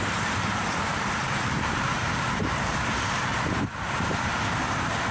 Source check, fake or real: fake